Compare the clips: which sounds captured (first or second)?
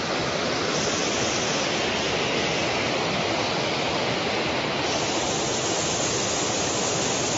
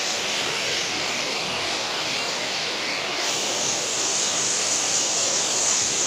first